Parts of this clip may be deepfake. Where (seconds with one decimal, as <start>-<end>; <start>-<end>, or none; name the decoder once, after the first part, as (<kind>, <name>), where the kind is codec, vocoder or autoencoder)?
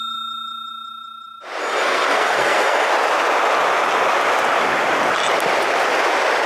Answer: 1.6-2.9 (codec, SNAC)